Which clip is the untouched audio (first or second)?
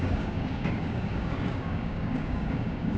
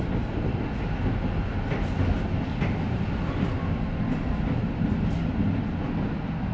second